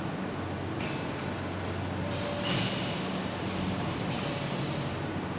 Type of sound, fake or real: real